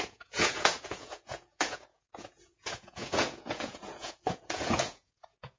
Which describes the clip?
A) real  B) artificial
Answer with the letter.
B